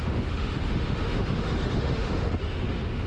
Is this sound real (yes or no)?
no